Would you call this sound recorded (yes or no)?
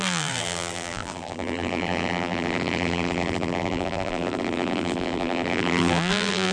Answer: no